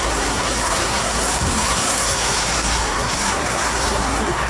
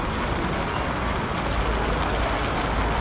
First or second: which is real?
second